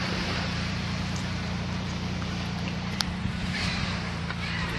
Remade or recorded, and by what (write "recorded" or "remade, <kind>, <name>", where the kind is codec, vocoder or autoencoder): remade, vocoder, BigVGAN v2